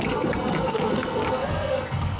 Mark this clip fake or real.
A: fake